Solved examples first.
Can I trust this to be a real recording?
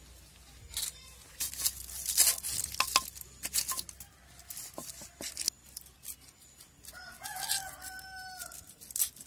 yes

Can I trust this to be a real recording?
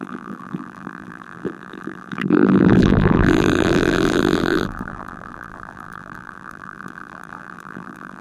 no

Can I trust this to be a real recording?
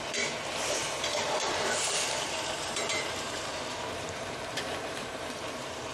no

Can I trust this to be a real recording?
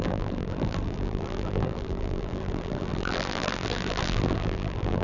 no